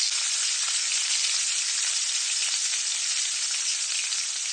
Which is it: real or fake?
real